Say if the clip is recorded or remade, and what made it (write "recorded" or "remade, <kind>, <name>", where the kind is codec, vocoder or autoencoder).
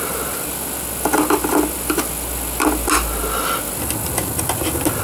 recorded